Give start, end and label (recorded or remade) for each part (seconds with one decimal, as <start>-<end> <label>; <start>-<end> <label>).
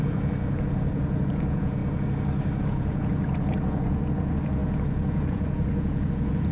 0.0-1.8 remade; 1.8-2.6 recorded; 2.6-6.5 remade